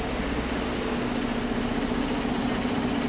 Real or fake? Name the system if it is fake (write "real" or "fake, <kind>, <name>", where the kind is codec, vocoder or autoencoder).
real